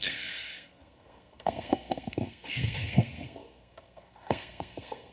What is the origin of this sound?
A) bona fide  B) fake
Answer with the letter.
B